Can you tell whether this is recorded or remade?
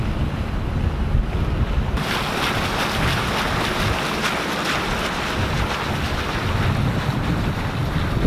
recorded